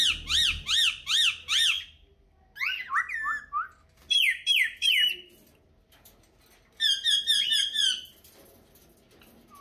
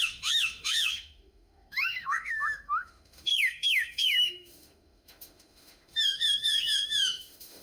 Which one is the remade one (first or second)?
second